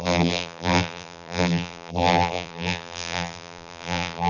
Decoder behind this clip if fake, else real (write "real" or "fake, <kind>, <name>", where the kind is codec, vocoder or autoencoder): fake, vocoder, BigVGAN v2